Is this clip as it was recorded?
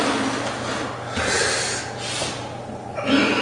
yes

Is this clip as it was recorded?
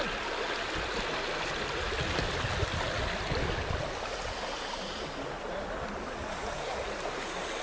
yes